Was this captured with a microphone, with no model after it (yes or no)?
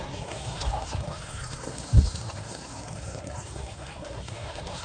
no